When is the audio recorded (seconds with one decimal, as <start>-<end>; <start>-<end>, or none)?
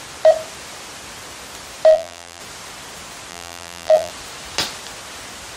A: 0.0-1.9; 2.4-3.3; 4.1-5.6